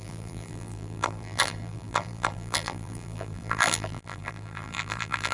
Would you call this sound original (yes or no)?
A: no